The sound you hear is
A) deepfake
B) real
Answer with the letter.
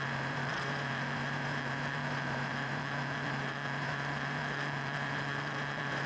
A